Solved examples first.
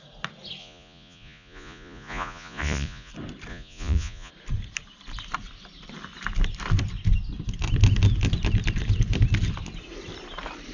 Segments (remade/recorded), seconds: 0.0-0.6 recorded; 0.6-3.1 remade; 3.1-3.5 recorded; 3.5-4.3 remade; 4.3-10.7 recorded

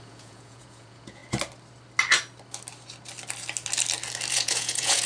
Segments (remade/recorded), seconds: 0.0-1.2 remade; 1.2-4.3 recorded; 4.3-5.1 remade